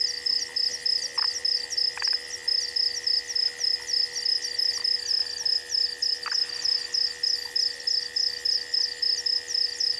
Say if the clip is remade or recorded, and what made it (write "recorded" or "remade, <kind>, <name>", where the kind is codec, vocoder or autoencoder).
recorded